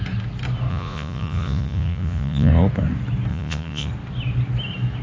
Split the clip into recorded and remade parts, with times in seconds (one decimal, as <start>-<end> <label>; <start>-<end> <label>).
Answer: 0.0-0.7 recorded; 0.7-2.5 remade; 2.5-3.3 recorded; 3.3-3.9 remade; 3.9-5.0 recorded